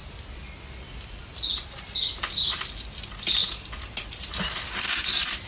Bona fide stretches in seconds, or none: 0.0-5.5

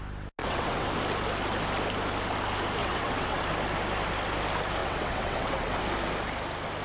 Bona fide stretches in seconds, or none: 0.0-0.4; 0.9-2.8; 3.4-4.8; 5.8-6.8

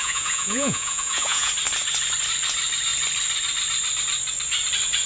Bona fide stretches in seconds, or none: 1.5-5.1

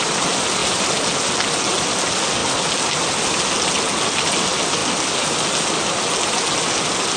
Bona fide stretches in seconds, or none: 0.0-7.2

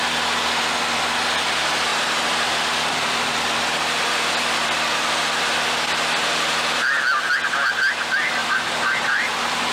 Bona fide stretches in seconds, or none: 0.0-1.9; 5.1-8.4; 9.0-9.7

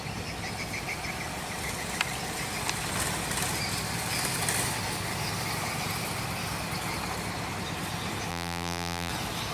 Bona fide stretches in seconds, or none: 0.0-8.3; 9.1-9.5